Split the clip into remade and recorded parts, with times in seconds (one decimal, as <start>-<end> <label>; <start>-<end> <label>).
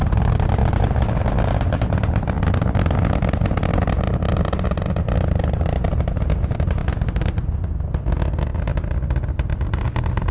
0.0-10.3 recorded